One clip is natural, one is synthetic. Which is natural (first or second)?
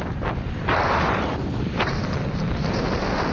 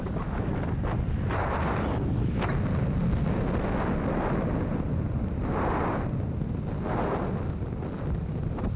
second